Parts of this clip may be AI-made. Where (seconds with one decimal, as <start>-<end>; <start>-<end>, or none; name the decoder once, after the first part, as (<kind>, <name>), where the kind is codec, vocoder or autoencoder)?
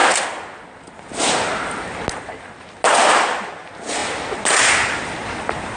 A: none